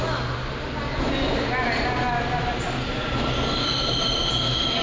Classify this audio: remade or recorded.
recorded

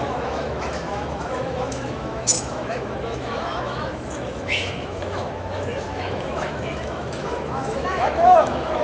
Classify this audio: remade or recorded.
remade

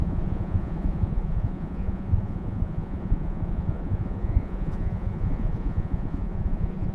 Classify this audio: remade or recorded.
remade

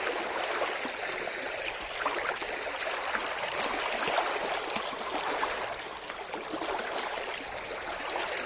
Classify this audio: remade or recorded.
recorded